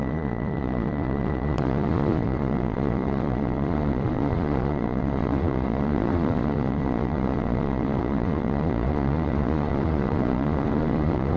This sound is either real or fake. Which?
fake